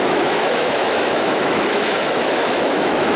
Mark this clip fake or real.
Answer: fake